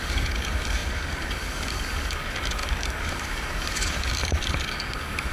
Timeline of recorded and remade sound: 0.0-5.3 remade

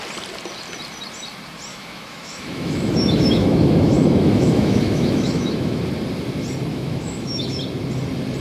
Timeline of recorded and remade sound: 0.0-1.7 recorded; 1.7-5.8 remade; 5.8-6.7 recorded; 6.7-7.6 remade; 7.6-8.4 recorded

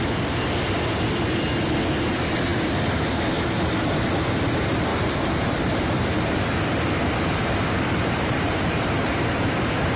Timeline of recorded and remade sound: 0.0-4.9 recorded; 4.9-10.0 remade

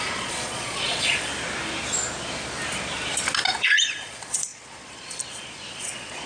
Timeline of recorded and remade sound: 0.0-1.3 remade; 1.3-3.6 recorded; 3.6-6.3 remade

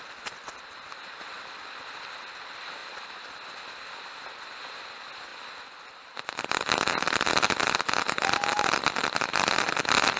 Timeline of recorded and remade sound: 0.0-10.2 recorded

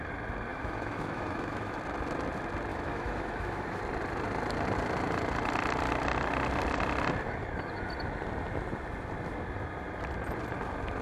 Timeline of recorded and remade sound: 0.0-0.5 recorded; 0.5-1.8 remade; 1.8-2.7 recorded; 2.7-3.8 remade; 3.8-11.0 recorded

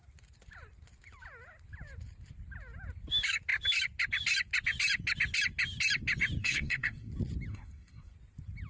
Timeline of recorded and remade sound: 0.0-6.4 recorded; 6.4-7.1 remade; 7.1-7.5 recorded; 7.5-8.1 remade; 8.1-8.7 recorded

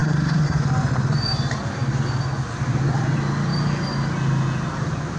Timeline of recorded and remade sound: 0.0-0.6 remade; 0.6-5.2 recorded